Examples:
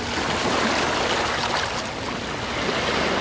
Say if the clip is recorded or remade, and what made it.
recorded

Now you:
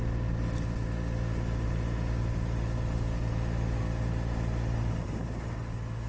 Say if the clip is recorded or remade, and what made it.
recorded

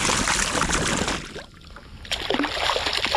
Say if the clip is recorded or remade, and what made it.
recorded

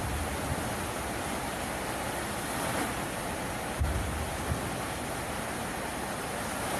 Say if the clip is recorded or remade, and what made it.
recorded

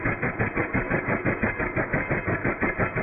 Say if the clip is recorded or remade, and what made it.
recorded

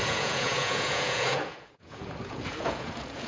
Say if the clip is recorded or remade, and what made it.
remade, vocoder, Vocos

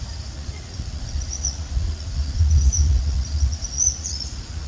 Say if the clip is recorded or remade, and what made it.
remade, vocoder, Vocos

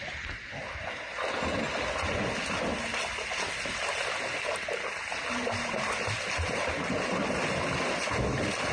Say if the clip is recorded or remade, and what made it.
recorded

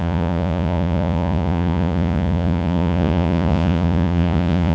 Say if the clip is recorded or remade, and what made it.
remade, vocoder, Vocos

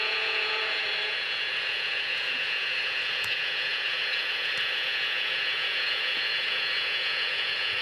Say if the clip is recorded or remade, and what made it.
remade, vocoder, Vocos